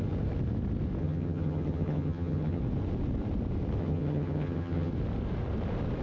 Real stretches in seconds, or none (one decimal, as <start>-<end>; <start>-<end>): 0.0-1.0; 2.6-3.8; 4.9-6.0